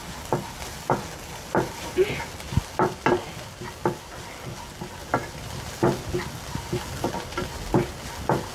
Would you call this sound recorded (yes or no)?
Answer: yes